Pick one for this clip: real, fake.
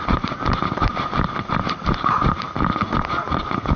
fake